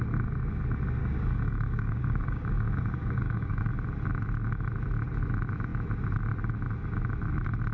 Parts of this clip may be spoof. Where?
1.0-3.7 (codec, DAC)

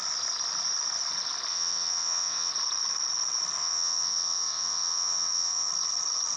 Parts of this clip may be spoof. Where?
1.5-2.5 (vocoder, WaveNeXt); 3.6-5.7

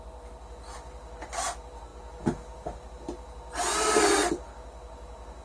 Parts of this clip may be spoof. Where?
none

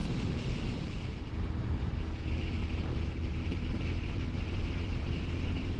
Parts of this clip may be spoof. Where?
0.0-1.3 (vocoder, BigVGAN v2); 2.6-5.8

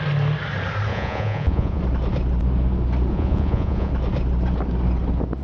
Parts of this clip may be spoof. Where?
0.9-1.8 (vocoder, Vocos); 3.1-3.9

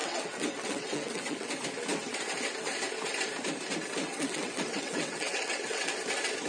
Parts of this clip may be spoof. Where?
0.0-1.5 (vocoder, WaveNeXt); 4.1-5.9